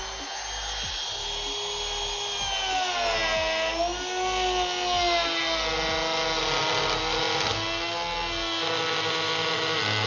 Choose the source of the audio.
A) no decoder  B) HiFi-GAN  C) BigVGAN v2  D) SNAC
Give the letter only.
A